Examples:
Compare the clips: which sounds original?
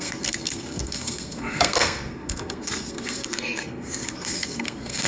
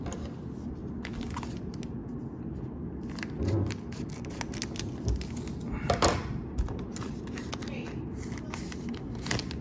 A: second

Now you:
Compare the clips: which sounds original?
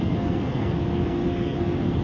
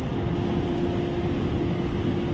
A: second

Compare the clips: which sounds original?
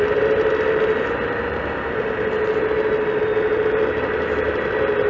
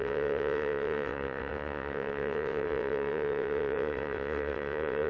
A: first